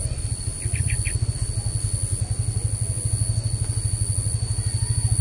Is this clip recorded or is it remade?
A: recorded